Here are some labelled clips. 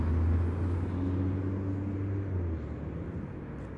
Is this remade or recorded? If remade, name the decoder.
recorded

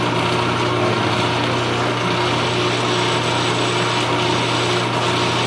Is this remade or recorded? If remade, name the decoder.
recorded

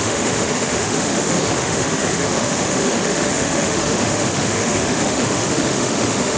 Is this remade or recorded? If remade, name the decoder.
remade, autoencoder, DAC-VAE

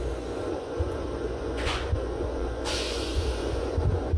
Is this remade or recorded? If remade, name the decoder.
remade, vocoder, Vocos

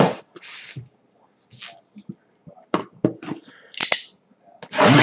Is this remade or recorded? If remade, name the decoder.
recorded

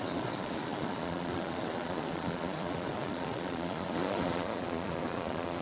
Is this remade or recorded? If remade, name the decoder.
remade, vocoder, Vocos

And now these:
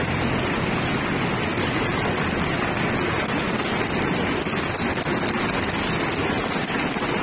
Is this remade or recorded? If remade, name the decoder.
recorded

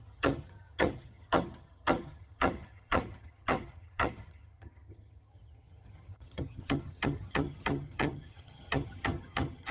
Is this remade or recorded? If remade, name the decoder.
remade, vocoder, HiFi-GAN